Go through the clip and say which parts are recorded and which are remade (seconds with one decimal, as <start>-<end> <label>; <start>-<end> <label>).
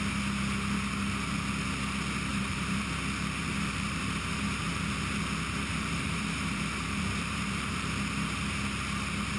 0.0-2.3 recorded; 2.3-2.9 remade; 2.9-3.4 recorded; 3.4-4.7 remade; 4.7-5.7 recorded; 5.7-8.1 remade; 8.1-9.4 recorded